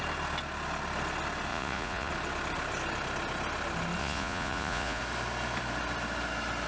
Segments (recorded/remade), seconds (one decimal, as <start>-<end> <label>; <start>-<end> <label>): 0.0-1.5 recorded; 1.5-2.1 remade; 2.1-4.0 recorded; 4.0-5.0 remade; 5.0-6.7 recorded